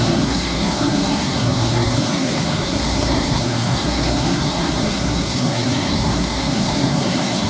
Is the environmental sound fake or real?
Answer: fake